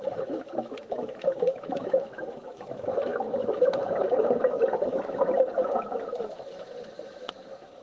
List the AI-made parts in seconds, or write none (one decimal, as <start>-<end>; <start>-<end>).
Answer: 0.0-7.8